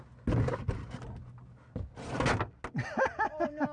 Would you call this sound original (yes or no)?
yes